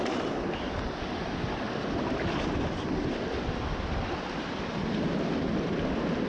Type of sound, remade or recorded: recorded